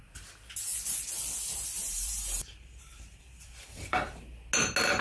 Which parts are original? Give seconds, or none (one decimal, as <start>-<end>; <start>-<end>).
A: 0.0-1.8; 4.2-5.0